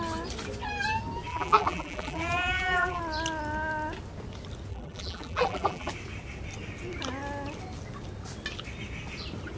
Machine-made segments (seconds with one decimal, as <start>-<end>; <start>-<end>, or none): 1.3-3.0; 4.7-5.9